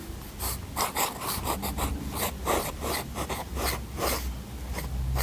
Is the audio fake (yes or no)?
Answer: no